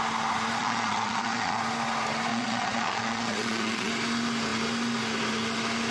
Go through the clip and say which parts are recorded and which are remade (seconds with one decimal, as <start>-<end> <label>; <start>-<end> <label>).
0.0-0.6 recorded; 0.6-1.6 remade; 1.6-2.3 recorded; 2.3-3.9 remade; 3.9-5.9 recorded

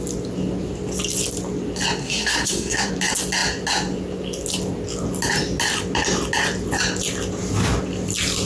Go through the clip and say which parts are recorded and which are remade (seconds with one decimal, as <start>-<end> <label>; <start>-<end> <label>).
0.0-2.0 recorded; 2.0-2.9 remade; 2.9-8.5 recorded

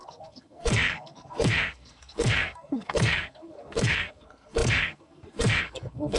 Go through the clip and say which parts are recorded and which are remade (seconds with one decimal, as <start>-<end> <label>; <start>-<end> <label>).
0.0-6.2 remade

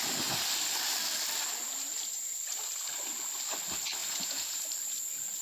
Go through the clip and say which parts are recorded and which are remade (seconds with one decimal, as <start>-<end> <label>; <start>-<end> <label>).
0.0-4.0 recorded; 4.0-4.6 remade; 4.6-5.4 recorded

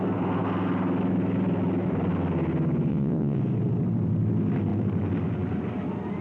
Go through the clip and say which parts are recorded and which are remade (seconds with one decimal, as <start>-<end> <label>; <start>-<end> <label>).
0.0-2.9 recorded; 2.9-3.4 remade; 3.4-6.2 recorded

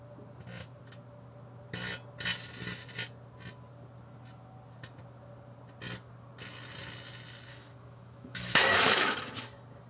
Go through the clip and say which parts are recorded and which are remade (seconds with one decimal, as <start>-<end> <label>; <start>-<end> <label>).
0.0-7.5 recorded; 7.5-9.2 remade; 9.2-9.9 recorded